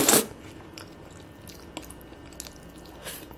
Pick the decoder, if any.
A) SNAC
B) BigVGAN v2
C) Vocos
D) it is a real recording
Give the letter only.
D